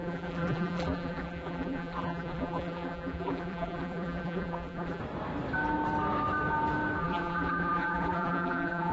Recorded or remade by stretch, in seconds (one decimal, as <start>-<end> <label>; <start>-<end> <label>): 0.0-5.0 remade; 5.0-7.0 recorded; 7.0-8.9 remade